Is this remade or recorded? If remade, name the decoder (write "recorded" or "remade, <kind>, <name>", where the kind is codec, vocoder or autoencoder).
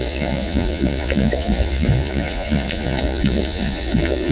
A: remade, vocoder, Vocos